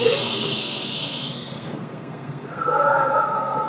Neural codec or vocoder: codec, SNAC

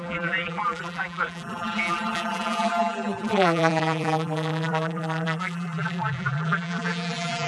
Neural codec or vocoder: vocoder, BigVGAN v2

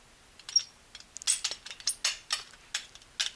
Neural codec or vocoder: none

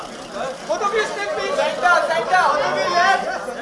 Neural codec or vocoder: none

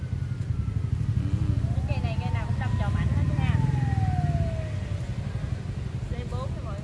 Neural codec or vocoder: none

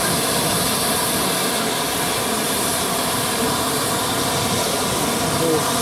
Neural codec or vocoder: none